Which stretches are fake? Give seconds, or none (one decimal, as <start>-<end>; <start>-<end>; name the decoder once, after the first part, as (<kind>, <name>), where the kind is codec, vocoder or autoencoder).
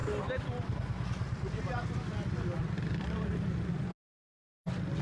none